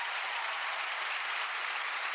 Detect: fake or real fake